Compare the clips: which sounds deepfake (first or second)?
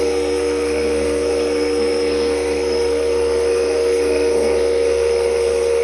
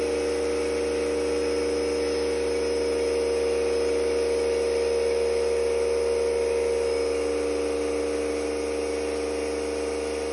first